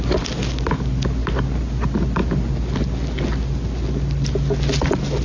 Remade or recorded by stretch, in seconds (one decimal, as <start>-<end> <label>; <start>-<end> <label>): 0.0-5.2 recorded